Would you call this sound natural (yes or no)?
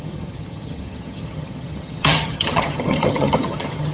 no